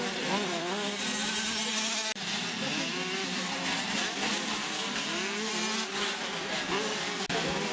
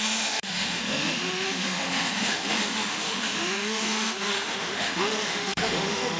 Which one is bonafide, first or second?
first